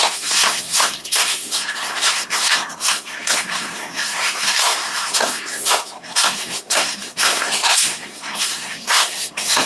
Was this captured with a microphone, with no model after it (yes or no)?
no